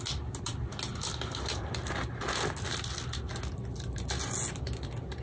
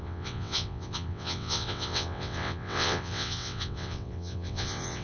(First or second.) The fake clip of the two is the second